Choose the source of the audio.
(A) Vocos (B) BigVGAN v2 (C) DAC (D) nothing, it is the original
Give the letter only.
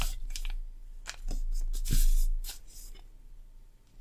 D